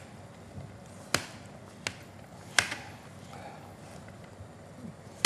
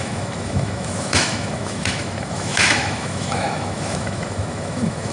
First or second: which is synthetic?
second